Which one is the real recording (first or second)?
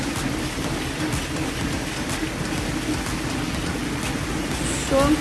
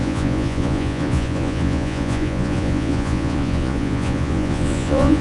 first